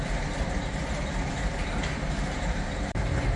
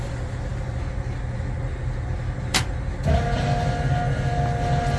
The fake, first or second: first